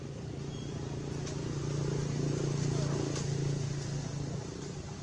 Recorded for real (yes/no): yes